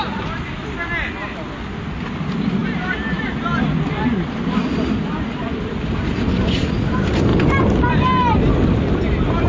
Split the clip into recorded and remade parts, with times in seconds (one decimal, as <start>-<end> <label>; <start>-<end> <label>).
0.0-9.5 recorded